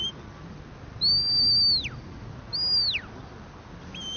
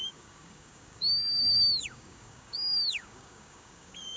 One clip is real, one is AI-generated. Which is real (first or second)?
first